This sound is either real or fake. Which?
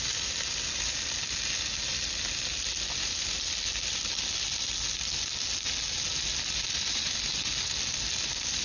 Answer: real